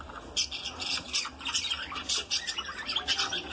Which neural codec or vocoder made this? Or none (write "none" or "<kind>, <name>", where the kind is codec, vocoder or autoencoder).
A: none